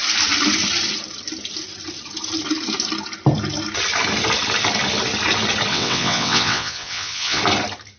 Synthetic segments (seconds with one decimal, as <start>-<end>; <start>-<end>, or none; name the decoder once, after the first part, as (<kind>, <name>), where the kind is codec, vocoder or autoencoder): 5.7-7.4 (vocoder, WaveNeXt)